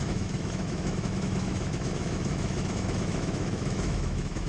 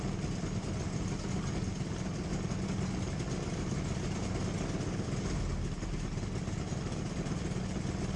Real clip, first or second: second